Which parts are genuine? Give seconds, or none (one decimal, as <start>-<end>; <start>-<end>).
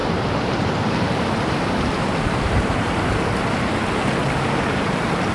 3.2-5.3